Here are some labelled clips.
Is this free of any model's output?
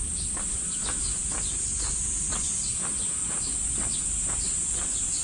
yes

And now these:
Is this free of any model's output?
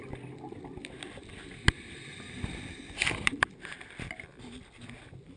yes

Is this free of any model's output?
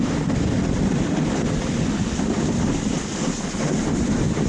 yes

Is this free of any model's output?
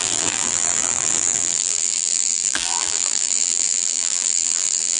no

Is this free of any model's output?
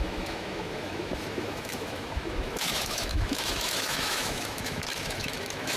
no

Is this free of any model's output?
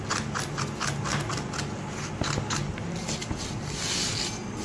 yes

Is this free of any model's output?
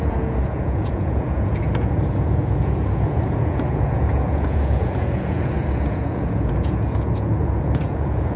no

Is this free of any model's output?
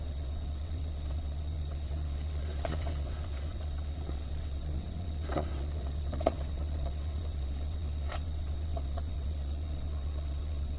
no